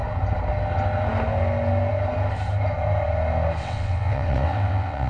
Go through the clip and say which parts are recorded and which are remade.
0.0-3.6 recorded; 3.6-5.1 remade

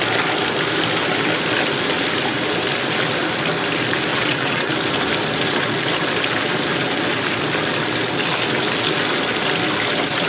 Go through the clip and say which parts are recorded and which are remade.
0.0-4.1 recorded; 4.1-4.7 remade; 4.7-10.3 recorded